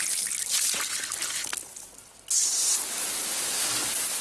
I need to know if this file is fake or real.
real